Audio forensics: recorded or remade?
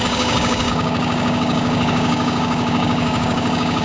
remade